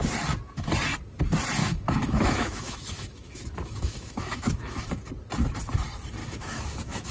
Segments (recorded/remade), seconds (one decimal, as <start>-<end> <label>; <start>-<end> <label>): 0.0-1.6 recorded; 1.6-5.0 remade; 5.0-6.2 recorded; 6.2-7.1 remade